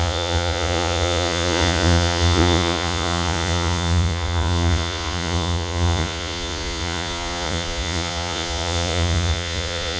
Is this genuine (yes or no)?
no